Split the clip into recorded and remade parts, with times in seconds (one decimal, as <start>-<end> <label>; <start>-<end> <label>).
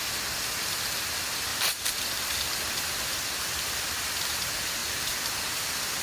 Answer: 0.0-6.0 remade